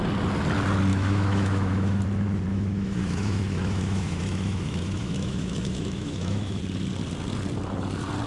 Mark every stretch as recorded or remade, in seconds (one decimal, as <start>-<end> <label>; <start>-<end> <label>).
0.0-0.9 recorded; 0.9-2.0 remade; 2.0-2.5 recorded; 2.5-6.6 remade; 6.6-8.3 recorded